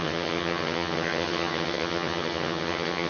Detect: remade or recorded remade